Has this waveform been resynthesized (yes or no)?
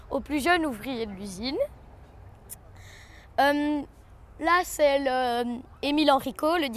no